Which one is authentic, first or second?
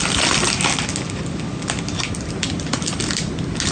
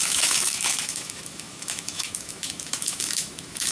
first